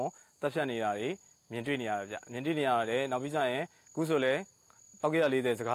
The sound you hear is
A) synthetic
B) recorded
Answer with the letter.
B